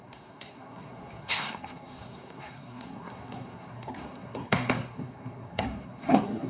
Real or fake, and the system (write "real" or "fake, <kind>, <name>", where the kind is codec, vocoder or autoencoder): fake, codec, SNAC